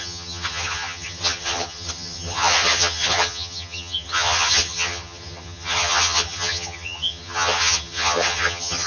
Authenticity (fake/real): fake